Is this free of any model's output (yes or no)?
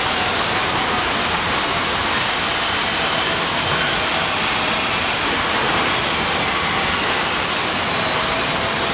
yes